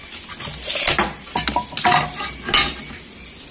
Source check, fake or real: real